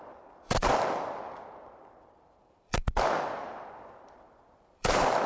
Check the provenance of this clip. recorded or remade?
remade